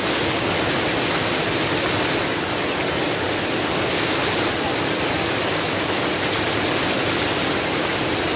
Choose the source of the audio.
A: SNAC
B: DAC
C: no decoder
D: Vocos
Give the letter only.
C